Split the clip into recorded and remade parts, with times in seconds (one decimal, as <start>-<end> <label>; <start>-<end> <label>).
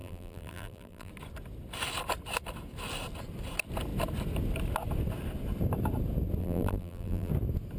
0.0-1.1 remade; 1.1-6.4 recorded; 6.4-7.3 remade; 7.3-7.8 recorded